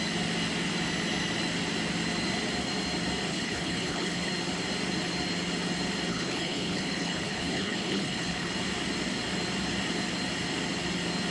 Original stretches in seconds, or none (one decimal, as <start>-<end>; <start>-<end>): 0.0-3.3; 4.3-6.1; 8.5-11.3